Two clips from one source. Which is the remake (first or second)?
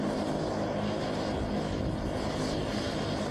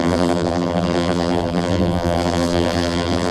second